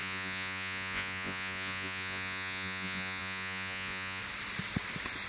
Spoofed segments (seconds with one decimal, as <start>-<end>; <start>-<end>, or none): 0.0-4.2